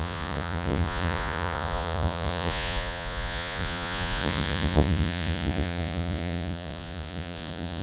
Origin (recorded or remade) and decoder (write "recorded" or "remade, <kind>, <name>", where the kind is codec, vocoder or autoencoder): remade, vocoder, Vocos